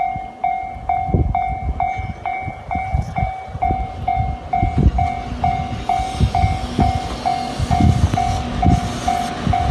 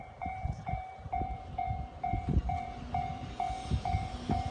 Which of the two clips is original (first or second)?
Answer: first